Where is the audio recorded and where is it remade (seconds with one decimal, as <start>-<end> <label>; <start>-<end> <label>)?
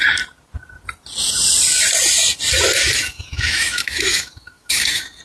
0.0-3.1 recorded; 3.1-5.2 remade